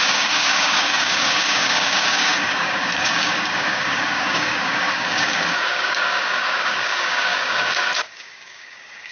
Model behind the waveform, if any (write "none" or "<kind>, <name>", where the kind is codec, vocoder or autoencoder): codec, DAC